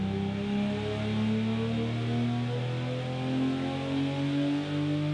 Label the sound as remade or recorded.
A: recorded